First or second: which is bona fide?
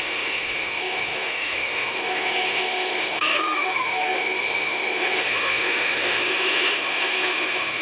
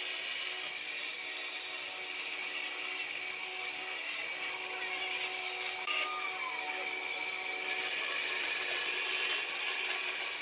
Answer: second